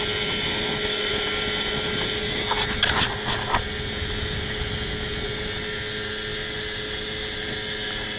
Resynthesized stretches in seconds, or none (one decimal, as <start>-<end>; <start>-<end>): none